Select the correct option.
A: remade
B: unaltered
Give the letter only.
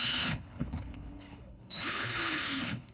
A